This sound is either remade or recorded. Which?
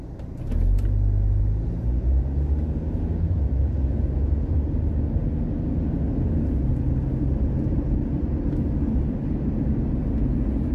recorded